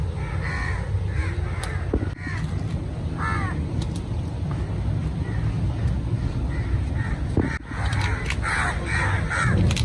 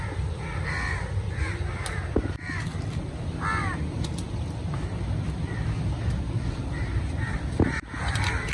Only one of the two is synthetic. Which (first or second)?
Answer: second